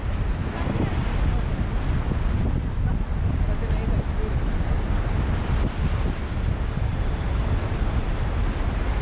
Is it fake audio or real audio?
real